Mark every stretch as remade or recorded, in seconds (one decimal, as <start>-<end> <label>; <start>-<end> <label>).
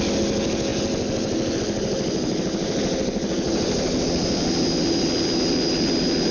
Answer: 0.0-6.3 recorded